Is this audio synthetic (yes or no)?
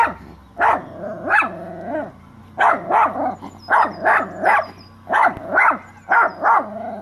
no